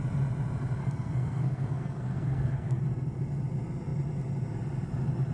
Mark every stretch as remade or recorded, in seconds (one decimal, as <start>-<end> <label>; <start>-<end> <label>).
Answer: 0.0-0.8 recorded; 0.8-2.8 remade; 2.8-5.3 recorded